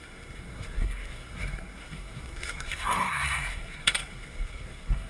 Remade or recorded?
remade